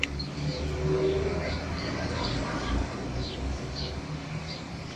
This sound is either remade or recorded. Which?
remade